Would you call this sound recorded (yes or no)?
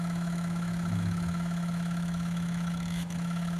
no